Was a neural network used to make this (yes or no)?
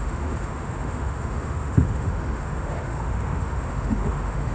yes